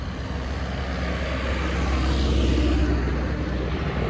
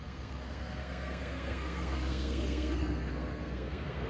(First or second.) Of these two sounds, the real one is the first